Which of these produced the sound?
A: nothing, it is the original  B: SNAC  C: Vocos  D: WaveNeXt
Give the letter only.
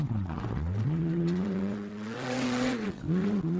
D